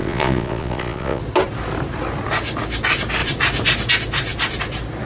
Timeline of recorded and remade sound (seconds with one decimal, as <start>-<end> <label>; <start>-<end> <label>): 0.0-1.2 remade; 1.2-5.1 recorded